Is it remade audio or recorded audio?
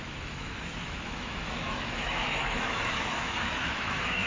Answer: remade